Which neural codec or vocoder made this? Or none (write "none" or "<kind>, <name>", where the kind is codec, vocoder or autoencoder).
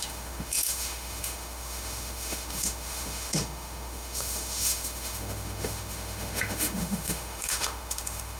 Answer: autoencoder, DAC-VAE